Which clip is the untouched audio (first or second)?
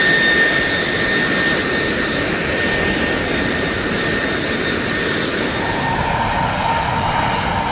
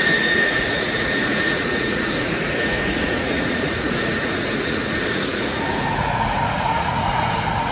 first